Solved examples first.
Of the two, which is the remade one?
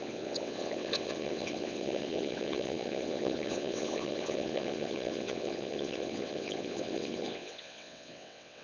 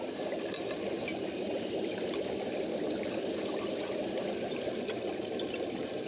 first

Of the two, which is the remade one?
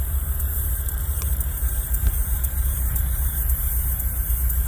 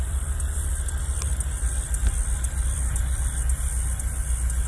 first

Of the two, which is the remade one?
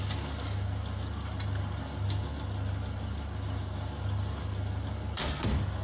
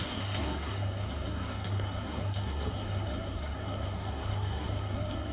second